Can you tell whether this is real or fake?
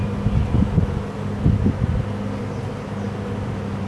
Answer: real